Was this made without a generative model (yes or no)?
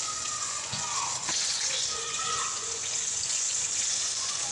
no